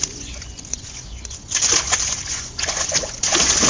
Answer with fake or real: fake